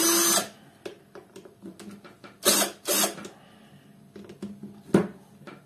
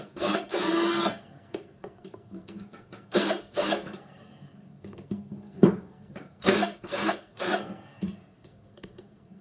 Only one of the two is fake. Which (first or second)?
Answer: second